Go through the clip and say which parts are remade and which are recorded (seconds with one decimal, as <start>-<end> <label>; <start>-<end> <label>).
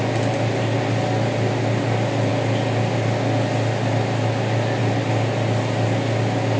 0.0-6.6 recorded